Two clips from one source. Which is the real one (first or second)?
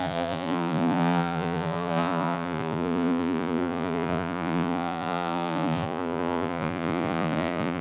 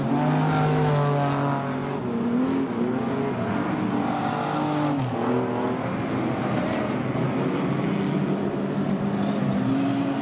second